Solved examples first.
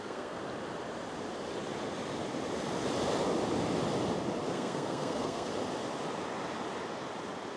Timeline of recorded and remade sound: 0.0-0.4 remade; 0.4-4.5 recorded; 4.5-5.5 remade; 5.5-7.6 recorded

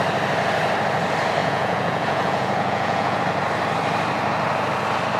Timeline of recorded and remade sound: 0.0-1.4 recorded; 1.4-3.2 remade; 3.2-5.2 recorded